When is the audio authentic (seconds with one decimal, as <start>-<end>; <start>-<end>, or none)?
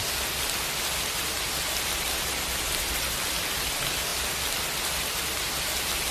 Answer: 0.0-6.1